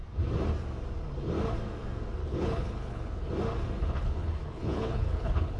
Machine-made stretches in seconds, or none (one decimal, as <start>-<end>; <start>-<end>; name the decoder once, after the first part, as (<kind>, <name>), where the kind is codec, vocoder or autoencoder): 2.2-3.3 (codec, HILCodec); 3.8-5.6

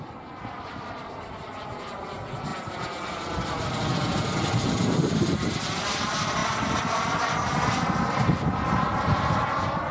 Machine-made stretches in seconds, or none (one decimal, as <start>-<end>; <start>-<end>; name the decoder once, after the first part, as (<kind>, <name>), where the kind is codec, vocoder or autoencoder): none

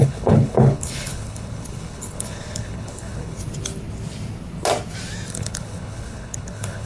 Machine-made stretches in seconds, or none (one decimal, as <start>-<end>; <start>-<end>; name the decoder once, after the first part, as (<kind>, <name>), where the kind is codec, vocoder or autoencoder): 0.0-3.4 (codec, HILCodec); 5.3-6.9

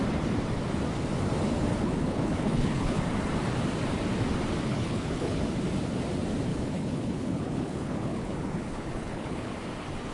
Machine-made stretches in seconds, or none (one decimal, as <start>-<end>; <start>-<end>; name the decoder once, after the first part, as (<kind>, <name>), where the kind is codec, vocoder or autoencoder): 1.7-3.0 (codec, HILCodec); 4.7-5.4; 6.5-9.5

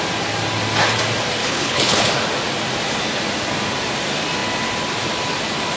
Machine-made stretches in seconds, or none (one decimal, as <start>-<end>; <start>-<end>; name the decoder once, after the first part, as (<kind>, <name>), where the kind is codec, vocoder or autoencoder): 1.4-2.1 (codec, HILCodec)

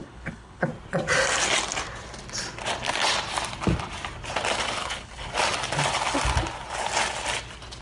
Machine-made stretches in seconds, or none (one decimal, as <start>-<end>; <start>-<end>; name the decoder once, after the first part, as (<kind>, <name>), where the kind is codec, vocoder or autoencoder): 0.0-0.7 (codec, HILCodec); 4.8-5.3

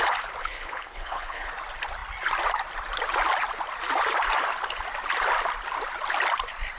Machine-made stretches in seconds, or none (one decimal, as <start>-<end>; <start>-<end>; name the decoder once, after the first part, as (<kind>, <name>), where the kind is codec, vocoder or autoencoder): 0.4-1.5 (codec, HILCodec)

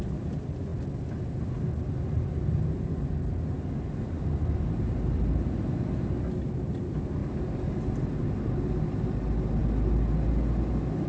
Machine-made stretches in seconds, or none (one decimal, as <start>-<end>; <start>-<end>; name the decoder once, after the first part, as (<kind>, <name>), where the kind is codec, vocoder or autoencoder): none